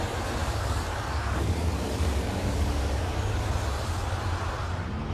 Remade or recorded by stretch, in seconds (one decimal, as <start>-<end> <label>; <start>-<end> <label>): 0.0-0.4 recorded; 0.4-3.5 remade; 3.5-5.1 recorded